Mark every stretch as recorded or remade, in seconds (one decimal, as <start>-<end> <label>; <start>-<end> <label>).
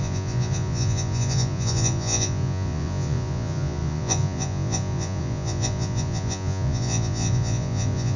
0.0-8.2 remade